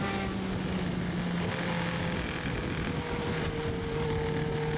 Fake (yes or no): no